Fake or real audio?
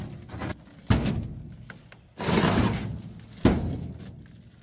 real